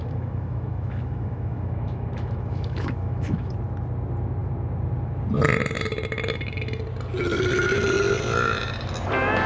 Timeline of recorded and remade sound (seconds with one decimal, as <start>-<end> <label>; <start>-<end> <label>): 0.0-3.5 remade; 3.5-9.5 recorded